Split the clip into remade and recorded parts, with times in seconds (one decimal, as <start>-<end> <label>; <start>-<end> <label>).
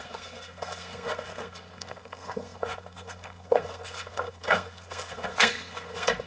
0.0-6.3 remade